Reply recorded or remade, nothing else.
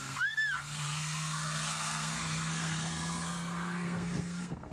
remade